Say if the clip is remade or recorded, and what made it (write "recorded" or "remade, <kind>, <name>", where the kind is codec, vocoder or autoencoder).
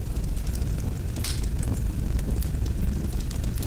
recorded